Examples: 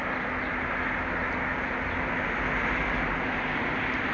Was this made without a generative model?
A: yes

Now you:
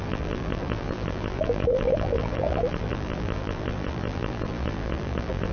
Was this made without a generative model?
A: no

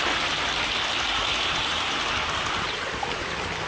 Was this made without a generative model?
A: yes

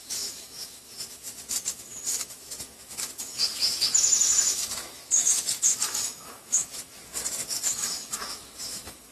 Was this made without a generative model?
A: no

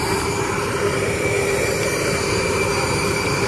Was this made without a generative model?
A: no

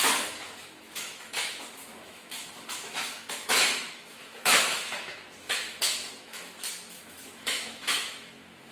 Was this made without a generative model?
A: no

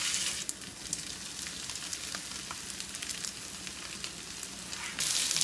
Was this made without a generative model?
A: yes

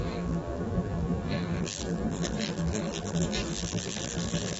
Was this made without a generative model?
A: no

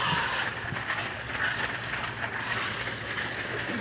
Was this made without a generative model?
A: yes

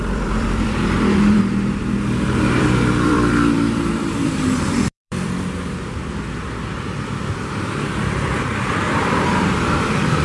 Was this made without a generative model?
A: no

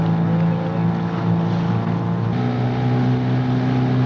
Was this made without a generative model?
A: yes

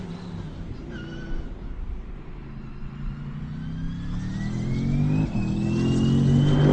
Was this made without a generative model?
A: yes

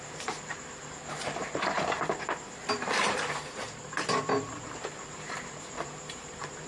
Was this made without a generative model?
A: no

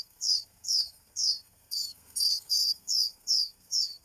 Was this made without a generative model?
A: no